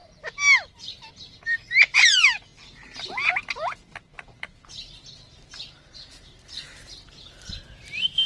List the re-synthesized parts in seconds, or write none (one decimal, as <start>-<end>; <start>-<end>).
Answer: none